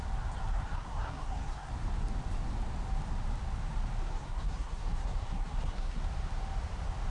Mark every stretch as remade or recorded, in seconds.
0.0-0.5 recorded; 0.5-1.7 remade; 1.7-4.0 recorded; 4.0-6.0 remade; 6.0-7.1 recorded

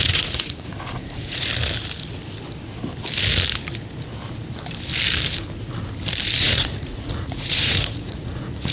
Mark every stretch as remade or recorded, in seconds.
0.0-1.5 remade; 1.5-6.4 recorded; 6.4-8.7 remade

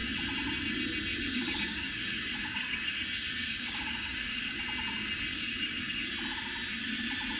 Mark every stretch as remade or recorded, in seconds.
0.0-1.1 recorded; 1.1-4.6 remade; 4.6-5.3 recorded; 5.3-6.1 remade; 6.1-7.4 recorded

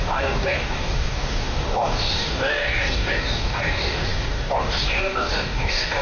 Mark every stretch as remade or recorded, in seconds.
0.0-6.0 remade